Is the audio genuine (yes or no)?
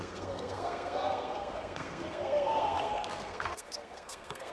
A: no